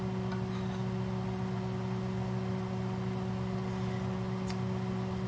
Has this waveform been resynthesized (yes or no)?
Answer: no